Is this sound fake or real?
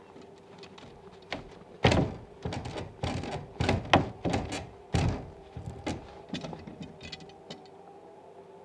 real